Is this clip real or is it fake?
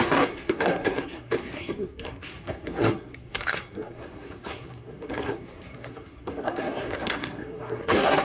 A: fake